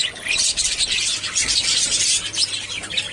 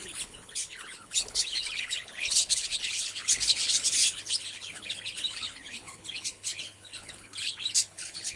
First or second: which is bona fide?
first